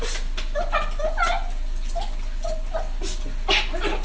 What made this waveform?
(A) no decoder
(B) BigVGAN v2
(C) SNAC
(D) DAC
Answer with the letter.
A